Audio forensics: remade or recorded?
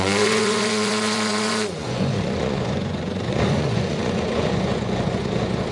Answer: remade